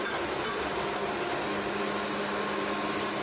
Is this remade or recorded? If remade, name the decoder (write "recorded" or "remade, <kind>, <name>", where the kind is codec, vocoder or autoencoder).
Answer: recorded